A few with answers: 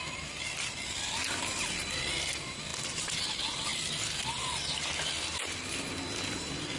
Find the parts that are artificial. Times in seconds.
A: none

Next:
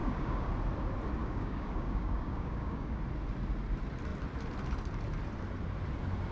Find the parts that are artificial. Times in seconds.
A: 0.0-0.5 (codec, DAC); 1.2-3.0

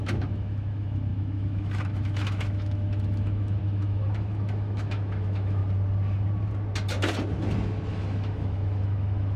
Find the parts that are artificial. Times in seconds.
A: 0.0-5.6 (autoencoder, DAC-VAE); 7.9-9.4

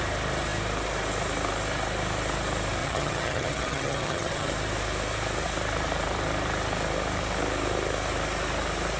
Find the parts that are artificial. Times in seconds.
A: 2.8-4.5 (vocoder, HiFi-GAN)

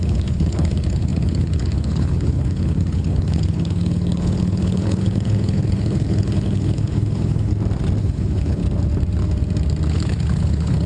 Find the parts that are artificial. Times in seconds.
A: 0.0-7.5 (codec, HILCodec); 8.0-8.6; 9.9-10.9

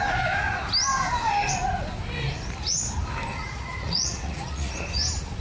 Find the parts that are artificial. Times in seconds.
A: 3.3-4.7 (vocoder, Vocos)

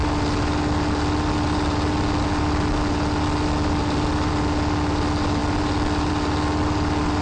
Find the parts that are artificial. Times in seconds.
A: none

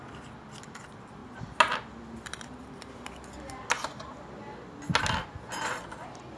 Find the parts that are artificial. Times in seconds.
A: none